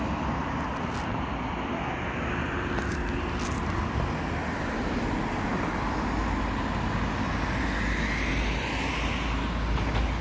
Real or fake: real